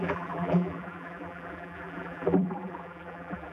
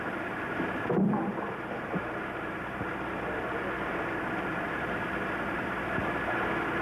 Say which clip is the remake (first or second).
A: first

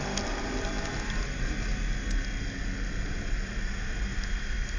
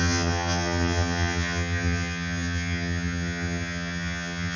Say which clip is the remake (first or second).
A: second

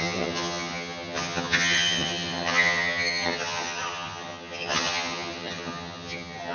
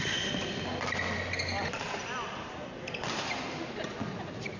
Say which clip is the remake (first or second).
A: first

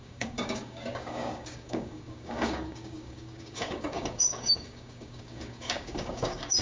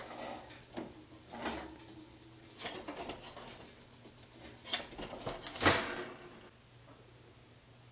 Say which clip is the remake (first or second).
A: first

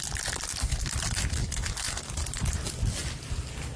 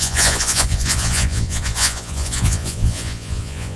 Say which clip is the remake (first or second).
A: second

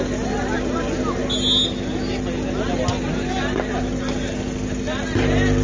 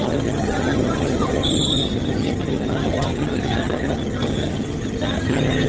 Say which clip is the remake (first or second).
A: second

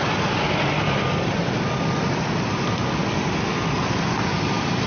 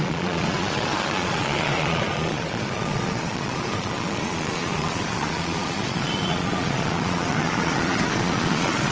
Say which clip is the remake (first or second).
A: second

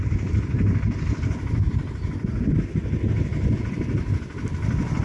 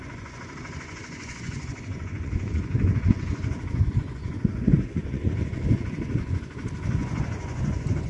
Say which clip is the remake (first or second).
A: second